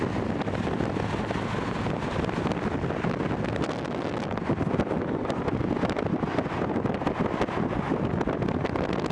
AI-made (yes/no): no